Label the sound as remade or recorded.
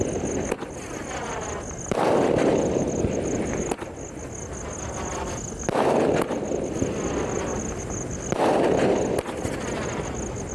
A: recorded